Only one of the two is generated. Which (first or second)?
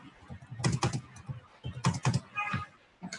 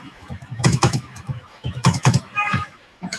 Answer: second